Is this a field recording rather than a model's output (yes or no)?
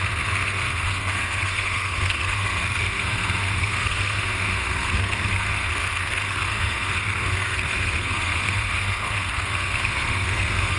no